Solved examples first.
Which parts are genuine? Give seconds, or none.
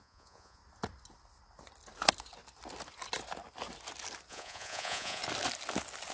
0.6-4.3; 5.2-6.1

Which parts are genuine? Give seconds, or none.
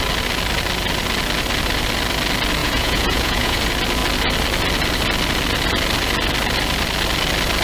0.0-2.6; 3.6-7.6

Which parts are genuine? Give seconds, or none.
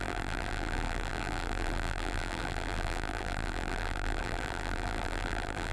none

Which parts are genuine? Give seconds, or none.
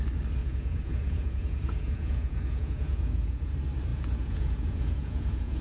0.0-0.4; 3.4-3.9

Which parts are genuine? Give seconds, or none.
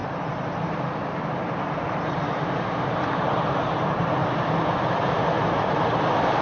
4.2-5.4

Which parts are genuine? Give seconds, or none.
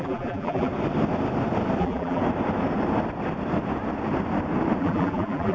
0.7-1.8; 2.2-4.8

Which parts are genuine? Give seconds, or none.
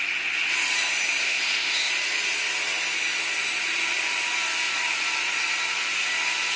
0.0-1.2; 1.9-6.6